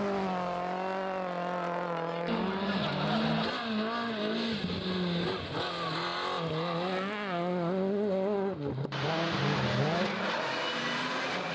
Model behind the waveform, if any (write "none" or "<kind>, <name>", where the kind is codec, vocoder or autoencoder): none